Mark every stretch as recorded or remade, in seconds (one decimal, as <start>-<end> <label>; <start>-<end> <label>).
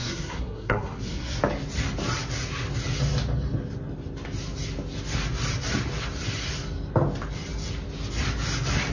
0.0-1.4 remade; 1.4-8.9 recorded